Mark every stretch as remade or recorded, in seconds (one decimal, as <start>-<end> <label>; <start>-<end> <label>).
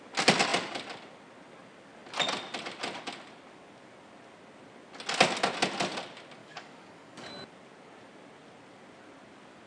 0.0-6.4 recorded; 6.4-7.3 remade; 7.3-9.7 recorded